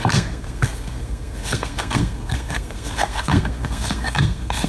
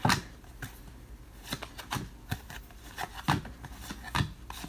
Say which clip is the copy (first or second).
first